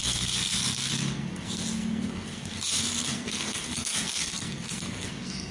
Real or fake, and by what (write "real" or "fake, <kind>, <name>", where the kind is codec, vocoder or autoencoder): fake, codec, SNAC